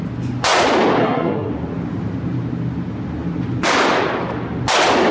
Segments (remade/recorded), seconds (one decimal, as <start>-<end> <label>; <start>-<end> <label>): 0.0-1.0 recorded; 1.0-1.5 remade; 1.5-5.1 recorded